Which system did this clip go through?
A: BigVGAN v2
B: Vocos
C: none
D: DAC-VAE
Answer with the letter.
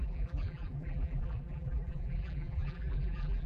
A